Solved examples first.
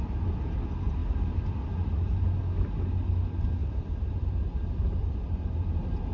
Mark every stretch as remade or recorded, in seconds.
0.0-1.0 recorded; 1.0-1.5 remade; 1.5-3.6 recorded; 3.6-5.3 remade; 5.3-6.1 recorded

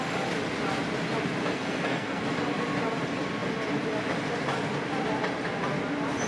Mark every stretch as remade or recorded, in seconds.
0.0-1.4 recorded; 1.4-2.2 remade; 2.2-6.3 recorded

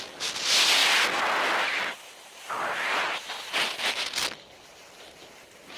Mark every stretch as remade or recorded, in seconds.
0.0-5.8 recorded

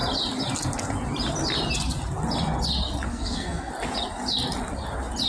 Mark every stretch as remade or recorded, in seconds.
0.0-3.1 recorded; 3.1-3.7 remade; 3.7-5.3 recorded